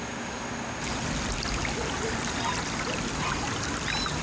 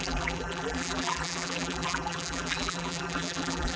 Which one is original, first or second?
first